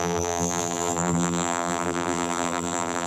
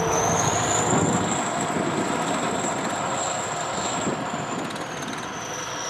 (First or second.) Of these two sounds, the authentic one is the second